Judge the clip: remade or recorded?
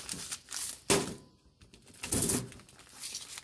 recorded